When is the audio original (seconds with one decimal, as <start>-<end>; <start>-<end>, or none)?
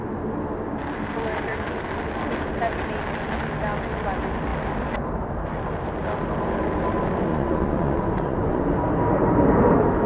0.0-7.3; 8.6-10.1